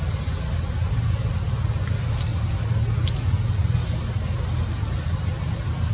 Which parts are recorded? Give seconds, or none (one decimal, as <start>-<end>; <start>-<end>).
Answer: 0.0-5.9